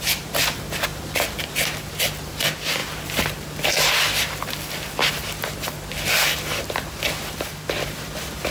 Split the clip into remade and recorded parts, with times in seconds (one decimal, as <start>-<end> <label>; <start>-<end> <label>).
0.0-0.9 remade; 0.9-1.9 recorded; 1.9-2.8 remade; 2.8-7.1 recorded; 7.1-8.5 remade